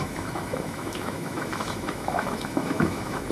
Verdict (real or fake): fake